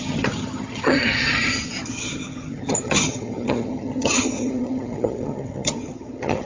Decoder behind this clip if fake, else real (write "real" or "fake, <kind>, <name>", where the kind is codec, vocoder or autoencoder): fake, vocoder, HiFi-GAN